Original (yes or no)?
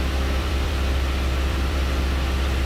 no